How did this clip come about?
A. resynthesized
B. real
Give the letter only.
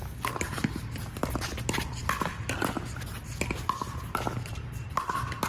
B